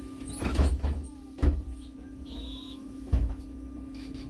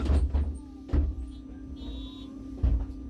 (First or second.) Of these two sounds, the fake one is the first